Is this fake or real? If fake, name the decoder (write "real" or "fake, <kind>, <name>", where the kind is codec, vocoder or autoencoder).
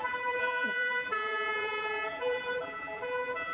fake, vocoder, BigVGAN v2